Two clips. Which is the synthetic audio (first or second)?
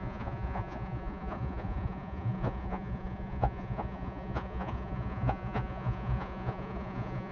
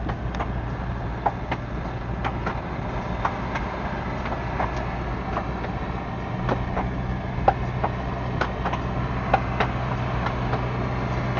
first